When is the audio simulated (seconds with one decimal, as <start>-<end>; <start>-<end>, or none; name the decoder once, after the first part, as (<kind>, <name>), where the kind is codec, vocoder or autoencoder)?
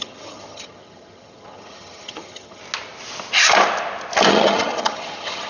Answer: 0.0-2.6 (vocoder, HiFi-GAN); 4.3-5.5